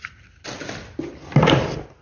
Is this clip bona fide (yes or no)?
yes